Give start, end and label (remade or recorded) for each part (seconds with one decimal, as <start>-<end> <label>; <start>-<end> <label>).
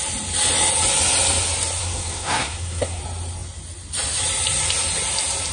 0.0-1.8 recorded; 1.8-3.0 remade; 3.0-5.5 recorded